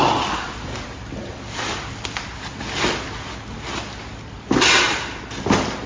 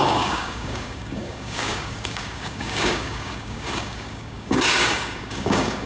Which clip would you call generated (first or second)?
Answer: second